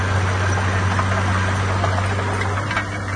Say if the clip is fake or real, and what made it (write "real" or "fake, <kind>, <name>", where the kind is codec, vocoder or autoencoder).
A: real